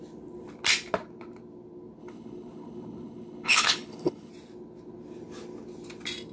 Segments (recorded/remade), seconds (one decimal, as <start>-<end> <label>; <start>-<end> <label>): 0.0-2.0 recorded; 2.0-4.3 remade; 4.3-6.3 recorded